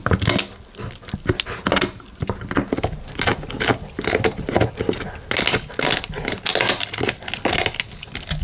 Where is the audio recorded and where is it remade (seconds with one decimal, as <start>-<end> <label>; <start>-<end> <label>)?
0.0-8.4 recorded